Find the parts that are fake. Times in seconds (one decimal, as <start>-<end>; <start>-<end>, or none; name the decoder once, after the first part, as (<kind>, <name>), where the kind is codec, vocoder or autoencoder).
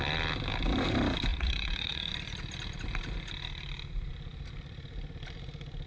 1.3-2.1 (vocoder, Vocos)